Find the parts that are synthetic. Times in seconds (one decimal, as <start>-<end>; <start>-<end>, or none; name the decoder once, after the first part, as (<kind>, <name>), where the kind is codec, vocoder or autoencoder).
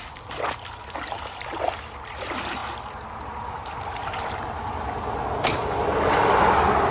none